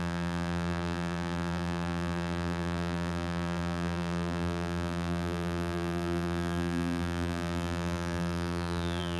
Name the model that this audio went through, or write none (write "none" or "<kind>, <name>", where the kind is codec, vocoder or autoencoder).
vocoder, BigVGAN v2